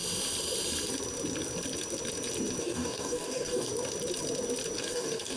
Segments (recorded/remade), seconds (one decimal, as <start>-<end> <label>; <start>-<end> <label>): 0.0-2.6 recorded; 2.6-3.7 remade; 3.7-4.8 recorded; 4.8-5.4 remade